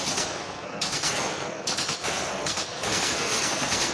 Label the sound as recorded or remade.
remade